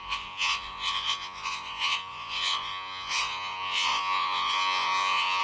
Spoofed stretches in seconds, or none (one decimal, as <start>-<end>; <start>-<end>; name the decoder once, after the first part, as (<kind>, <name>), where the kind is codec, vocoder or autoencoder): 0.0-5.4 (vocoder, Vocos)